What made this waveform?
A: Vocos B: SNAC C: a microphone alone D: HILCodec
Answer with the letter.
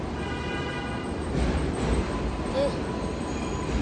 C